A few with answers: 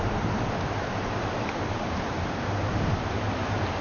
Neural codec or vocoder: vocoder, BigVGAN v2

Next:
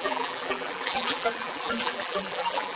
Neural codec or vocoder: vocoder, BigVGAN v2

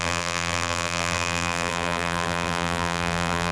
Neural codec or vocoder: vocoder, BigVGAN v2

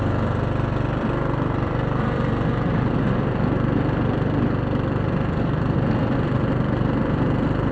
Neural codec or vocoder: vocoder, BigVGAN v2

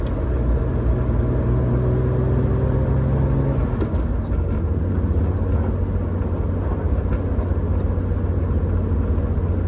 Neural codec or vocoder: none